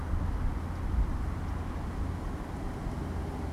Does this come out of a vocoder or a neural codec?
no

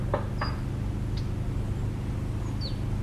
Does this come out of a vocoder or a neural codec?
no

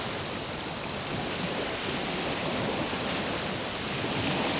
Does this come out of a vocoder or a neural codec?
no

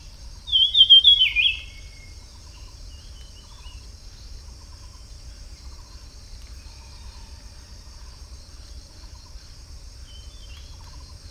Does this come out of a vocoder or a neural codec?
yes